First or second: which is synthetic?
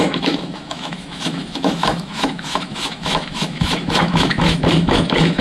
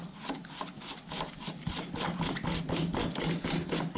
first